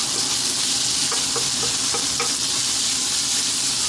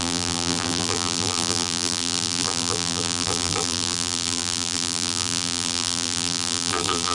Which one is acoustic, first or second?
first